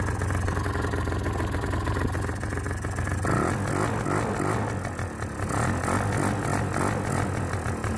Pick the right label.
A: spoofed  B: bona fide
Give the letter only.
B